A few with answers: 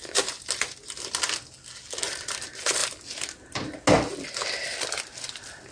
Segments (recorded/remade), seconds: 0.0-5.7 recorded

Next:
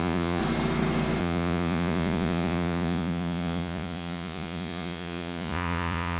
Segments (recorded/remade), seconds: 0.0-0.4 remade; 0.4-1.2 recorded; 1.2-6.2 remade

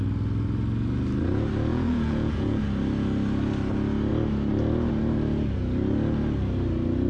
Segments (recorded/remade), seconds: 0.0-1.7 recorded; 1.7-2.6 remade; 2.6-7.1 recorded

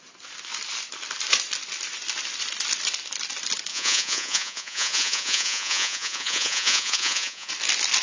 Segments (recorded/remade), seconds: 0.0-3.7 recorded; 3.7-7.5 remade; 7.5-8.0 recorded